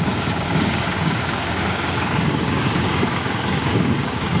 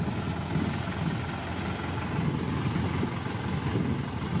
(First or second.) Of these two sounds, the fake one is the first